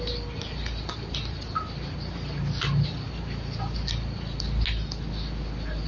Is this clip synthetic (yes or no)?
no